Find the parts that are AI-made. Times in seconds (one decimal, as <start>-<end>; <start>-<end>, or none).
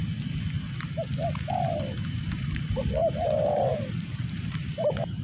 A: 1.5-5.2